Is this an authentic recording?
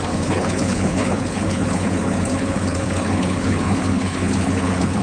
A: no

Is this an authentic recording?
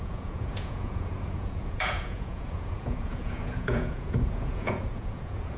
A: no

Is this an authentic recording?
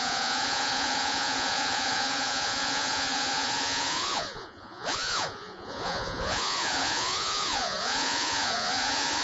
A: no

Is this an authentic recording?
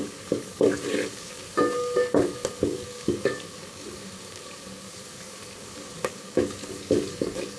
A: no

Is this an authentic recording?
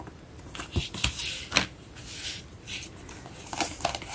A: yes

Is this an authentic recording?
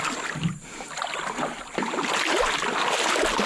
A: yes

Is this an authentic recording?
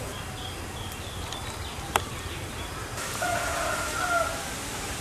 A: yes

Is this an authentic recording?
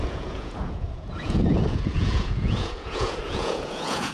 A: no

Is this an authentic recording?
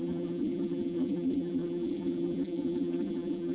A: no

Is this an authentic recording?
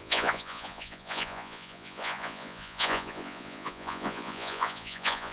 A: no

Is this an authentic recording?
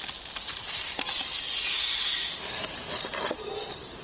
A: yes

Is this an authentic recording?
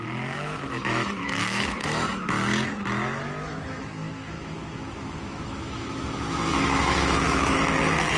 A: no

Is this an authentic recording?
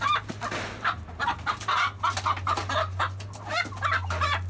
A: yes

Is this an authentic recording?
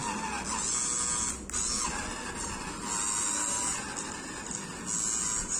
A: yes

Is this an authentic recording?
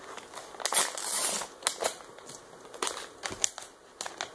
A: yes